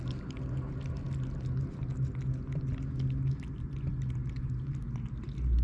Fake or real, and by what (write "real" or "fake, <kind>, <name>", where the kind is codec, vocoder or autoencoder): real